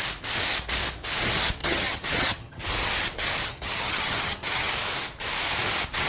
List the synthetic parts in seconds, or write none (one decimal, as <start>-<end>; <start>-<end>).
1.6-2.6; 3.4-4.7